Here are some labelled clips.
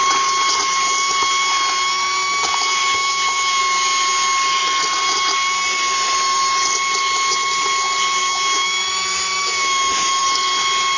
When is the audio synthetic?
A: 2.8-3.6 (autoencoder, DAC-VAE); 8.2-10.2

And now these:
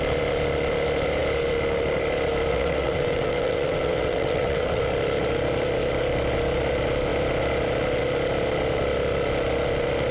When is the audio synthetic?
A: 2.5-4.8 (vocoder, WaveNeXt)

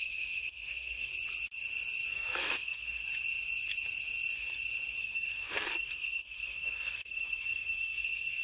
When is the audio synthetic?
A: 0.0-1.1 (codec, SNAC); 2.1-3.0; 5.0-8.4

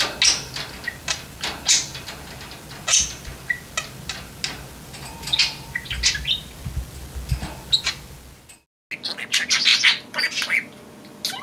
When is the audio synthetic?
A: none

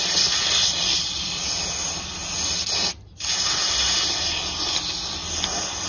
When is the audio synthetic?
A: none

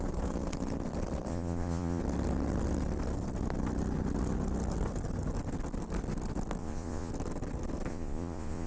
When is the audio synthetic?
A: 1.3-2.0 (vocoder, Vocos); 6.6-7.1; 7.9-8.7

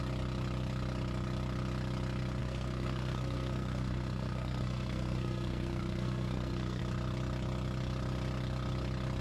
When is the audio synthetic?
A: 2.4-6.8 (codec, SNAC)

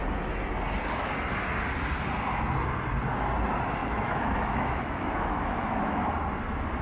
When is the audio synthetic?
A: 3.8-6.1 (autoencoder, DAC-VAE)